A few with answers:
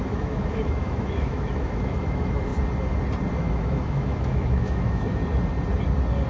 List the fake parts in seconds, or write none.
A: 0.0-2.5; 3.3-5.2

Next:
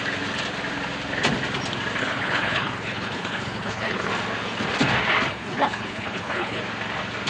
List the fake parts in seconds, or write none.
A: 2.0-4.1; 5.3-6.6

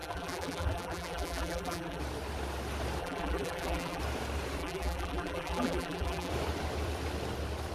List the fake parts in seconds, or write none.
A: 0.0-2.0; 3.0-4.0; 4.6-6.3

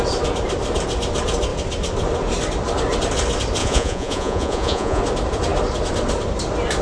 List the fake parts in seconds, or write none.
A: 3.6-5.0